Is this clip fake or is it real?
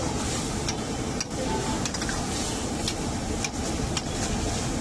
real